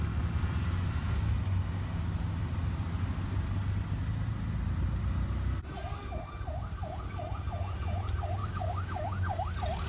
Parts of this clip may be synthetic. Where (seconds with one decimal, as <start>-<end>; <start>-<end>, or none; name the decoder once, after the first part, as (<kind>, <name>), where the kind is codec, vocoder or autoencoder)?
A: 8.4-9.5 (codec, DAC)